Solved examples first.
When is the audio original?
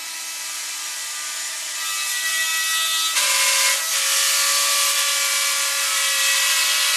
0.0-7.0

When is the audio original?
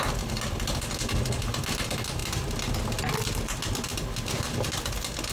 0.0-5.3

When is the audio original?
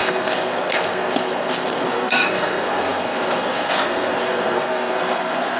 none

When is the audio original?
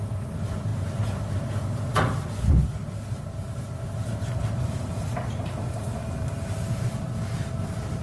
5.0-5.8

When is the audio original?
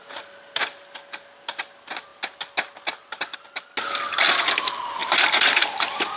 0.0-5.0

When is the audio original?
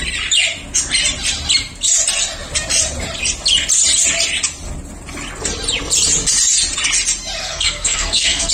0.0-7.4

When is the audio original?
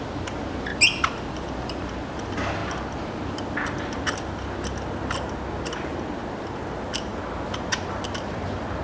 0.0-8.8